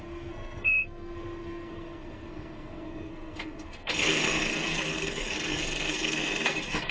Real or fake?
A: fake